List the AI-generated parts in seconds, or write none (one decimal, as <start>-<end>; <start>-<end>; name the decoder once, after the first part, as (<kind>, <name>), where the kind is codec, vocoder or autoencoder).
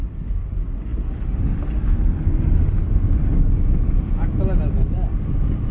none